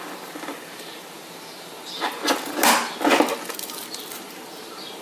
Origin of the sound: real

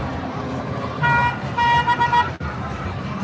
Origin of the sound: fake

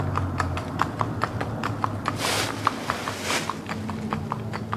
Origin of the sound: real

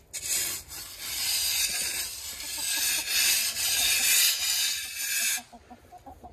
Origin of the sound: real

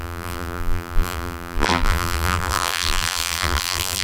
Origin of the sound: fake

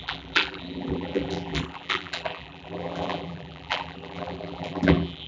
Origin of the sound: fake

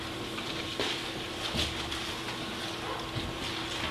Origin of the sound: real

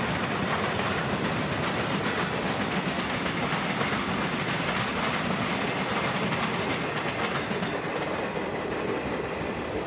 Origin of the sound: real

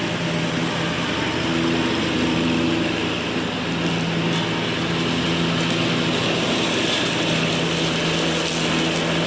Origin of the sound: real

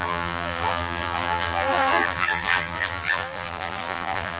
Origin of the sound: fake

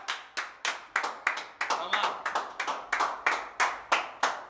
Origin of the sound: real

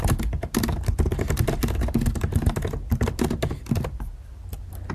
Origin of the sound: real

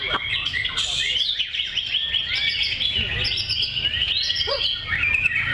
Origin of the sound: real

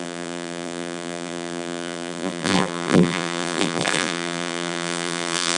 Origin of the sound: fake